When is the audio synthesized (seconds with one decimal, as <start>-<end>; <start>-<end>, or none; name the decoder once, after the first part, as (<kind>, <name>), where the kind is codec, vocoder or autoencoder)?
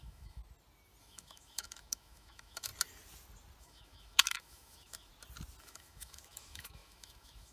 0.0-0.4 (autoencoder, DAC-VAE); 1.0-2.7; 3.6-5.1; 5.6-7.5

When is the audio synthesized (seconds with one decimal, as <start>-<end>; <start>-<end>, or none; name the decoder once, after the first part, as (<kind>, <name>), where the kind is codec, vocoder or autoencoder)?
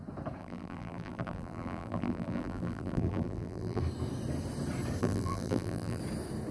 0.4-3.8 (vocoder, BigVGAN v2); 5.0-6.0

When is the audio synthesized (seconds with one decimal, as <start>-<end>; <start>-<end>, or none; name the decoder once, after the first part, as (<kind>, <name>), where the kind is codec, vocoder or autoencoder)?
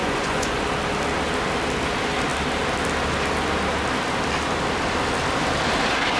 0.0-0.6 (vocoder, Vocos)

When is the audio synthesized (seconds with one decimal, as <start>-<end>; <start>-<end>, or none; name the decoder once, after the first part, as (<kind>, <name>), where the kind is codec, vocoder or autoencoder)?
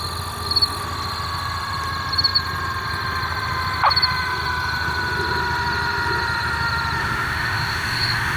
7.0-8.4 (autoencoder, DAC-VAE)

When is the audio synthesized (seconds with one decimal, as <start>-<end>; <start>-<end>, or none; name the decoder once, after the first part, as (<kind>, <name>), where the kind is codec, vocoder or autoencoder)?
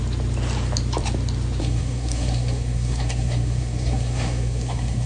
1.6-5.1 (codec, SNAC)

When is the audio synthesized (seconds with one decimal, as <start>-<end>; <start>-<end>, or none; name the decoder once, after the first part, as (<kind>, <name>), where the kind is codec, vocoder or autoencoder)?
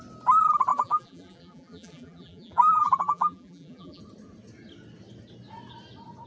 0.7-4.0 (vocoder, BigVGAN v2)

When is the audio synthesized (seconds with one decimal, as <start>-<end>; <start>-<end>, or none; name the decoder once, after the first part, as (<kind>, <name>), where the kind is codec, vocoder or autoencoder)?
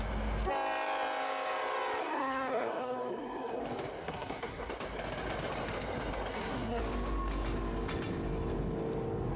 2.0-3.6 (codec, SNAC); 4.0-4.7; 6.3-6.8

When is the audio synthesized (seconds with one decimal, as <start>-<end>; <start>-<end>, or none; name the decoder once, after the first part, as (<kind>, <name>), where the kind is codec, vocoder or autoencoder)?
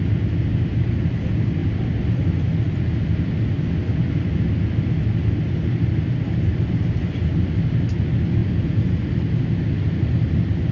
none